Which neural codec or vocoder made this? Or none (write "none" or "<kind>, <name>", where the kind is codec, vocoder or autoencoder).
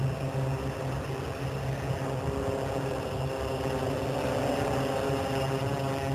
none